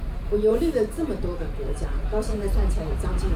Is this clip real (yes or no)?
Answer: no